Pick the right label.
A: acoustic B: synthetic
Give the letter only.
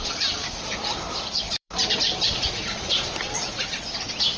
B